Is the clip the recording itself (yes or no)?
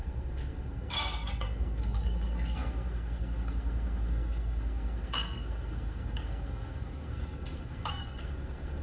no